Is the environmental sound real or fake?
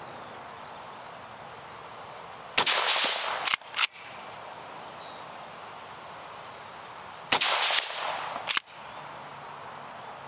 real